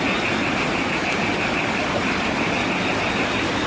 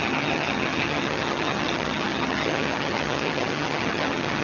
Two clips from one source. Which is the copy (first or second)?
second